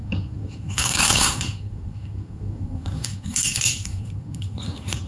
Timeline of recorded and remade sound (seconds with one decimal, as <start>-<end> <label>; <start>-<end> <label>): 0.0-5.1 remade